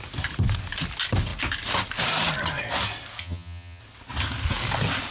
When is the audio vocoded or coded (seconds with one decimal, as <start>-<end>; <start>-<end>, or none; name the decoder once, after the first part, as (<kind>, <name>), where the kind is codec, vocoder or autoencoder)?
3.2-3.8 (vocoder, HiFi-GAN)